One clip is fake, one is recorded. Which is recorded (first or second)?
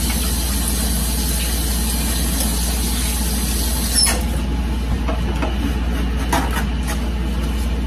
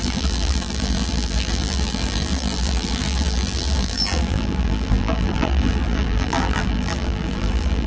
first